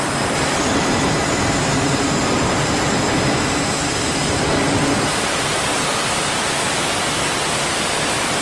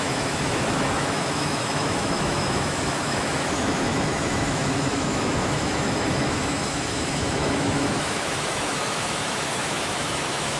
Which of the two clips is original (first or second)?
first